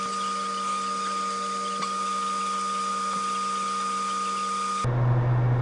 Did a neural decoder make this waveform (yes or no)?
no